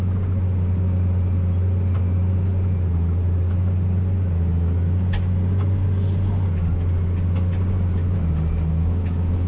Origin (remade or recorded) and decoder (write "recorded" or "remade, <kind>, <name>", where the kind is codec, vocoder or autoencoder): recorded